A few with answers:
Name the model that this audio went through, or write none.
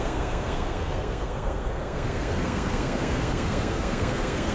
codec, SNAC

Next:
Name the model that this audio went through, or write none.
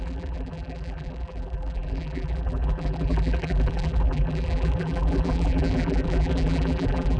vocoder, BigVGAN v2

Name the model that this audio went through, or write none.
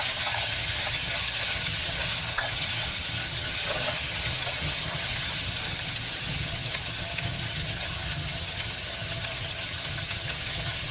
vocoder, HiFi-GAN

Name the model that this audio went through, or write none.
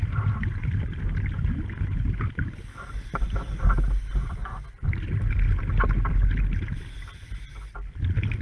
none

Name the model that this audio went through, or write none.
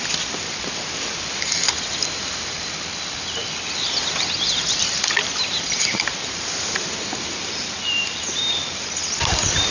vocoder, BigVGAN v2